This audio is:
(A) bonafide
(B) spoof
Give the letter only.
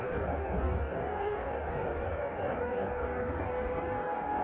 B